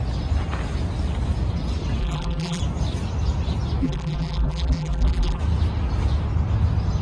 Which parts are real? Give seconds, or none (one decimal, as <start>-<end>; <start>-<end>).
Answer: 0.0-2.0; 2.6-3.8; 5.4-7.0